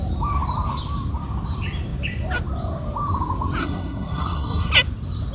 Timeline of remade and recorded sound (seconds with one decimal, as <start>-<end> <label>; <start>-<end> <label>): 0.0-3.6 recorded; 3.6-4.7 remade; 4.7-5.3 recorded